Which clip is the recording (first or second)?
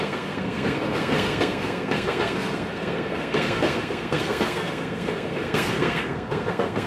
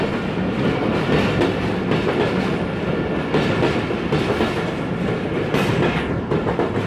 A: second